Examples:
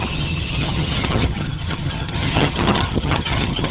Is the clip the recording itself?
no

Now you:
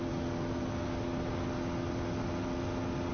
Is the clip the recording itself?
yes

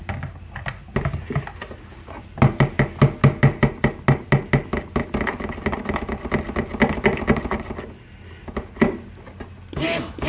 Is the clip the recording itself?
yes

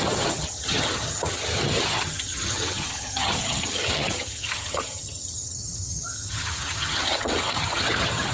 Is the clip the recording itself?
no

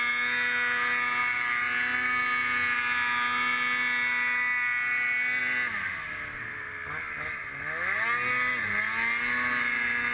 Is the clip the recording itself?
yes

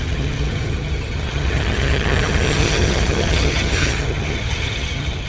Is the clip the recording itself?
no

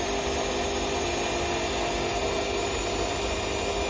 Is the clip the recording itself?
yes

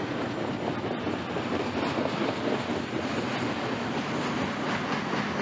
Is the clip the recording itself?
yes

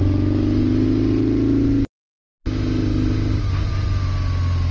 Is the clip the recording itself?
yes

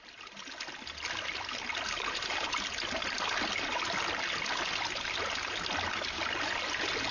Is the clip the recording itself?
yes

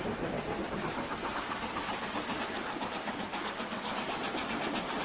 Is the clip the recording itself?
yes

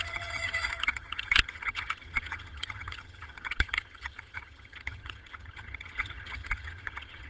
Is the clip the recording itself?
no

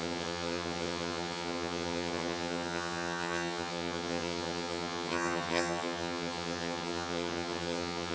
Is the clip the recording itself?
no